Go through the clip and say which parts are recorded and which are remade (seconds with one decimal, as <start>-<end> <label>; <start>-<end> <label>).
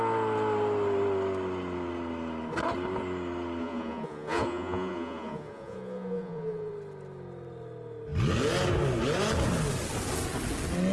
0.0-3.6 recorded; 3.6-6.7 remade; 6.7-10.9 recorded